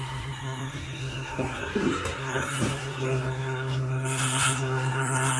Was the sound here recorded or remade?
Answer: remade